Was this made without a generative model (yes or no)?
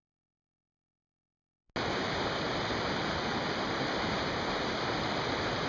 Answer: yes